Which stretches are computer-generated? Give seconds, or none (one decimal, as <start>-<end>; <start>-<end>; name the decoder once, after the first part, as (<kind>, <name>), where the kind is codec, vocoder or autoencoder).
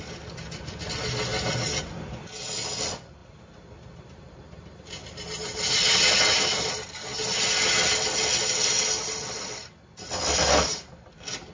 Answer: none